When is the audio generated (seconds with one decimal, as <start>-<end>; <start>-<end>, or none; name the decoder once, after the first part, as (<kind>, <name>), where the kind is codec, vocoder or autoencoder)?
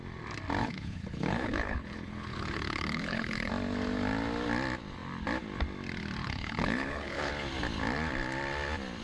0.6-3.5 (codec, HILCodec); 6.2-7.3